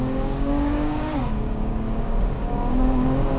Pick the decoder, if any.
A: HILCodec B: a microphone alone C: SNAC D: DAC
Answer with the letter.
D